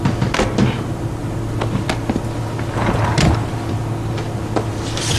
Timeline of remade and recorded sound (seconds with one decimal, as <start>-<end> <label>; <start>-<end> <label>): 0.0-5.2 recorded